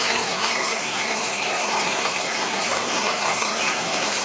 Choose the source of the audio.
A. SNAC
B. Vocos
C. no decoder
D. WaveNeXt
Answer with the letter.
A